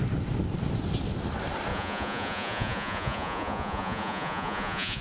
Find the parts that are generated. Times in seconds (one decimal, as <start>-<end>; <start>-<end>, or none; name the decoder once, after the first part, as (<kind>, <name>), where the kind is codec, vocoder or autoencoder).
1.7-5.0 (vocoder, Vocos)